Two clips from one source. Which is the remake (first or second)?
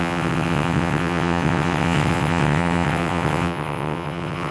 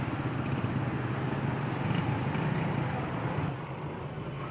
first